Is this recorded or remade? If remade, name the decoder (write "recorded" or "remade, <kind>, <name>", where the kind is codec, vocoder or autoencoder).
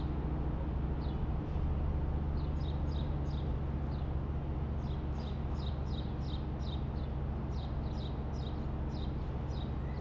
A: recorded